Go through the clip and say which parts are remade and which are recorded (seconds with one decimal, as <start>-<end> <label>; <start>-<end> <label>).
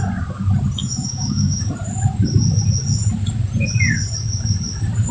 0.0-0.8 recorded; 0.8-1.7 remade; 1.7-5.1 recorded